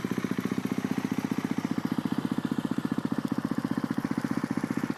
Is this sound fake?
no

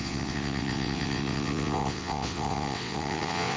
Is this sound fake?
yes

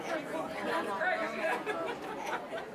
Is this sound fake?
no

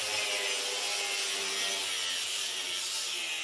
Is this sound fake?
no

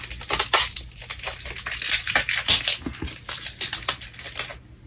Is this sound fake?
no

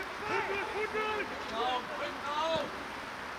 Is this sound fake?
no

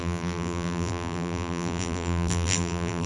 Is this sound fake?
yes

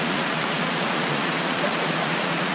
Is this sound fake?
yes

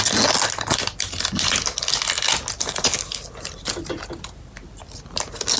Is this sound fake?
no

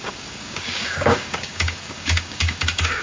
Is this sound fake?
yes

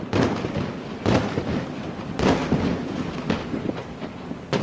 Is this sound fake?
no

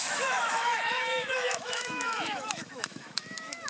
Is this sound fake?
yes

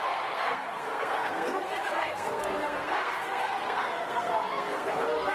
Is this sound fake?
yes